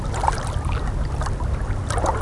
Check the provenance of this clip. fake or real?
real